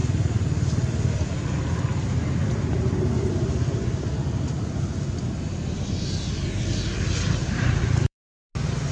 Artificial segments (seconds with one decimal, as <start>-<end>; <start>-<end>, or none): 7.4-8.5